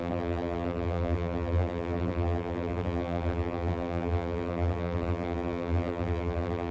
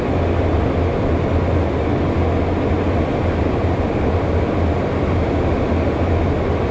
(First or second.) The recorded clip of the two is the second